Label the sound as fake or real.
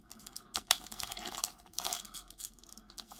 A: fake